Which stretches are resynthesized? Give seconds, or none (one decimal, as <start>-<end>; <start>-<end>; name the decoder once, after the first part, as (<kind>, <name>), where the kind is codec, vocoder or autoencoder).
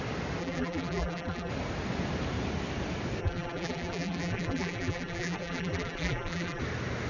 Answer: 0.4-1.5 (vocoder, BigVGAN v2); 3.2-6.6